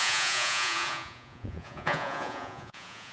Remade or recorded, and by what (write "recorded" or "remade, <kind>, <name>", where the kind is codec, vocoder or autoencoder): remade, vocoder, Vocos